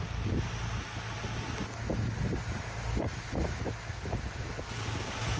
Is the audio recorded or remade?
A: recorded